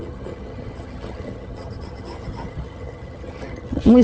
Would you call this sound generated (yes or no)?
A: yes